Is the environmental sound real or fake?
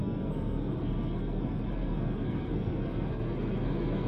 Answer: fake